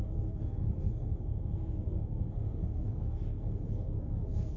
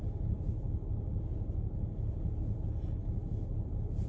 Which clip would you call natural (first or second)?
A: second